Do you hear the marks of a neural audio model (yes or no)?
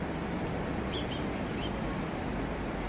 no